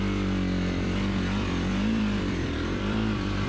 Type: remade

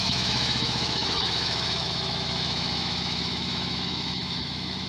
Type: remade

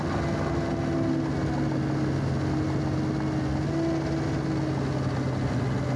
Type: recorded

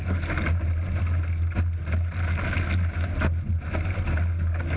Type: recorded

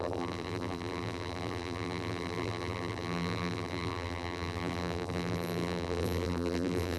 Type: remade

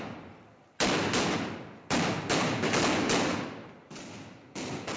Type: recorded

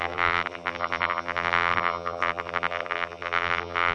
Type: remade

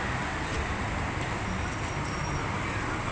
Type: recorded